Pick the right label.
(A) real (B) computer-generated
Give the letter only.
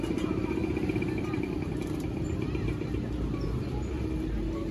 A